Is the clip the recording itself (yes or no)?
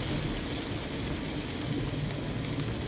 yes